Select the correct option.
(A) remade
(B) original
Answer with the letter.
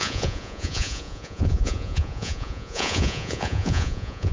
A